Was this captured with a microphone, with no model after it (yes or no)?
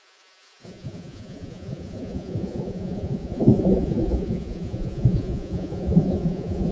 no